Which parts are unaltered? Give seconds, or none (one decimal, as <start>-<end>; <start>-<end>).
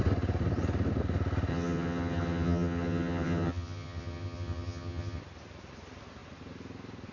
0.0-1.5; 5.2-7.1